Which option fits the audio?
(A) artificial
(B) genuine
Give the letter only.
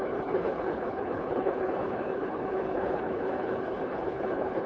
A